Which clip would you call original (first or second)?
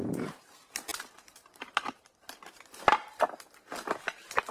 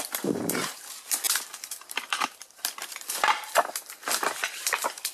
first